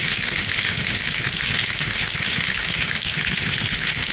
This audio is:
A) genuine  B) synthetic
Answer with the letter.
B